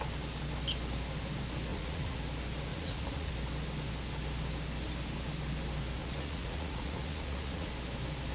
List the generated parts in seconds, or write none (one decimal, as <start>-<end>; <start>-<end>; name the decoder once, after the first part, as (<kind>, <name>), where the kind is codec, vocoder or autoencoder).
1.7-2.2 (vocoder, Vocos); 2.7-3.3; 6.0-7.7